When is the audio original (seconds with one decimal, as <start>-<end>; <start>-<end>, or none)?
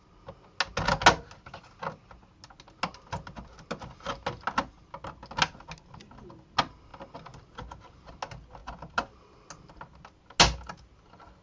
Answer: 0.0-11.4